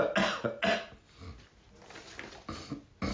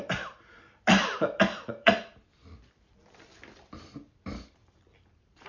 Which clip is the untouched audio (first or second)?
first